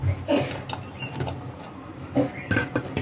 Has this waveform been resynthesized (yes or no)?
no